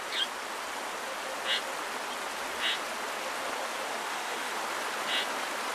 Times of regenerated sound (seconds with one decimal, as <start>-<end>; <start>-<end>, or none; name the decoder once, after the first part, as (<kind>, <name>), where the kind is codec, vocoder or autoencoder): 4.0-4.5 (autoencoder, DAC-VAE)